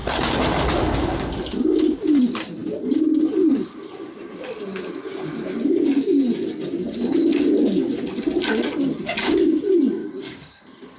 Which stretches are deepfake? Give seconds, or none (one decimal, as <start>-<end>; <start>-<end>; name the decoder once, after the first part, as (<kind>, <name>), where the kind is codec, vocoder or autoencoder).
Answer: 10.0-10.6 (codec, DAC)